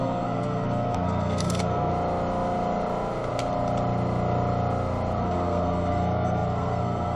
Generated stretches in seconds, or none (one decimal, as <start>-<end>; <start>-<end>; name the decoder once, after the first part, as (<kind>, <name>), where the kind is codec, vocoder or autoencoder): 0.0-1.9 (codec, SNAC); 5.2-7.2